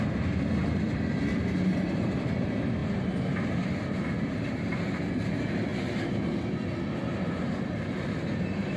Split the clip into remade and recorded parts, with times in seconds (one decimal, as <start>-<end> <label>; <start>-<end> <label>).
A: 0.0-8.8 recorded